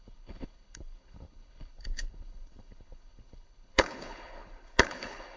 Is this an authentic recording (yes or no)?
no